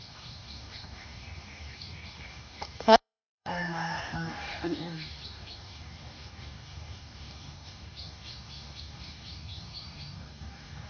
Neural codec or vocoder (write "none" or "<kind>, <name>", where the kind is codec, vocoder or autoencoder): codec, DAC